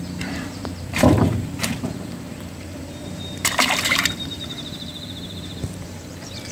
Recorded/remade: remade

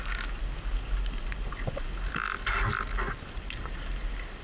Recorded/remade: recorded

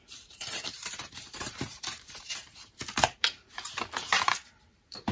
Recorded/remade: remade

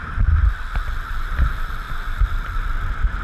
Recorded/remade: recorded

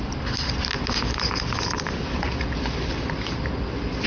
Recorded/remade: recorded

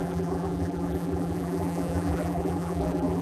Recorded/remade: remade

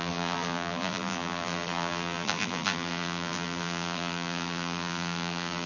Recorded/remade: remade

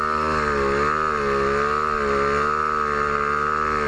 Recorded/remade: recorded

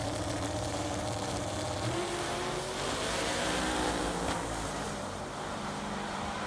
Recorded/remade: remade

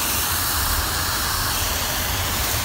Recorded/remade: remade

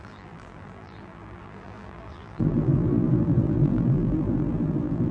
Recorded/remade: remade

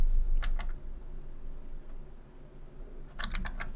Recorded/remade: recorded